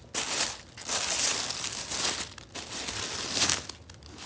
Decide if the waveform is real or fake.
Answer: real